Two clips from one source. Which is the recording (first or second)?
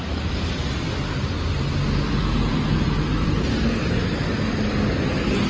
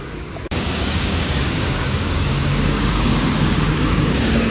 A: first